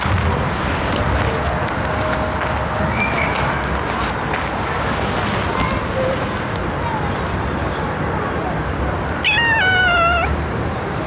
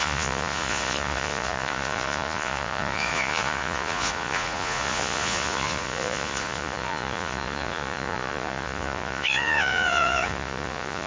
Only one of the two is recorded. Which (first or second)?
first